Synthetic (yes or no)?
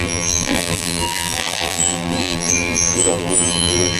yes